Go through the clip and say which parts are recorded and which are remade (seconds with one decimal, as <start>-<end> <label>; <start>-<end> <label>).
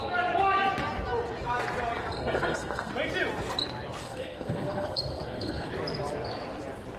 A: 0.0-2.0 recorded; 2.0-2.9 remade; 2.9-4.0 recorded; 4.0-5.7 remade; 5.7-7.0 recorded